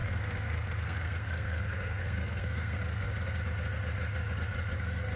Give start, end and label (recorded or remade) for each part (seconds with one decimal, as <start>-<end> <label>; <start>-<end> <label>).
0.0-3.1 remade; 3.1-5.2 recorded